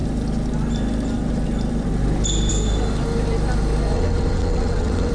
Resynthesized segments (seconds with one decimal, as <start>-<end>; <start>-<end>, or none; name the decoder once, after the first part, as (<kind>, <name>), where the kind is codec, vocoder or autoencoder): 3.9-5.1 (vocoder, WaveNeXt)